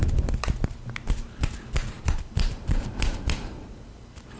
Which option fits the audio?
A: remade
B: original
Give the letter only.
B